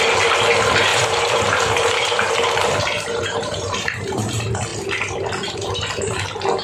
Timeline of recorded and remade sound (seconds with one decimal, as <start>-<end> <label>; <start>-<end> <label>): 0.0-0.9 recorded; 0.9-4.2 remade; 4.2-6.6 recorded